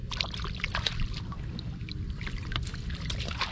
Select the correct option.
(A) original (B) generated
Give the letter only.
A